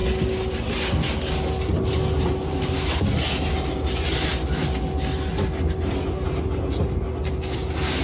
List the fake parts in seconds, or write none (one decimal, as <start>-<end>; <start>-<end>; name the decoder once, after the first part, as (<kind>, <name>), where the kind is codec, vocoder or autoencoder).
none